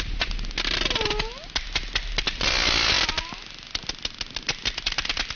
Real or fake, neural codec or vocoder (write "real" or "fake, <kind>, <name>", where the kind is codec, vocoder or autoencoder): real